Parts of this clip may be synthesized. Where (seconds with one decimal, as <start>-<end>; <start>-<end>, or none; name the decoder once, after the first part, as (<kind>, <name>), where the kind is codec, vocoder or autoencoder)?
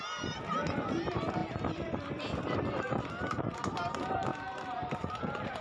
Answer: none